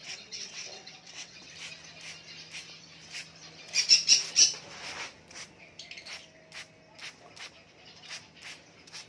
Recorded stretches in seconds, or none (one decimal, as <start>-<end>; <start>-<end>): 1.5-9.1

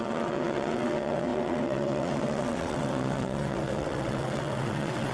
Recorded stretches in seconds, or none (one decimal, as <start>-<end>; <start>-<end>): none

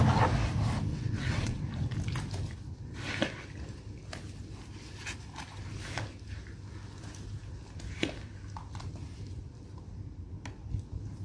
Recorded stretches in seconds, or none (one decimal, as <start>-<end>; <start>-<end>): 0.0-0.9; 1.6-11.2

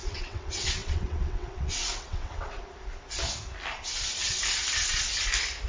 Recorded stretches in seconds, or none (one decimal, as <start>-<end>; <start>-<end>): 2.6-5.7

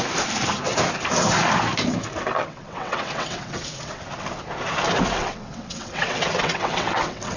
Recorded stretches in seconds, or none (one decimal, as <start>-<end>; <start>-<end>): 0.0-2.4; 4.0-5.2